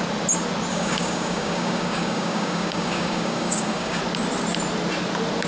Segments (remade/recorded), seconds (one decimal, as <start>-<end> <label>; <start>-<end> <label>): 0.0-0.7 recorded; 0.7-4.0 remade; 4.0-5.5 recorded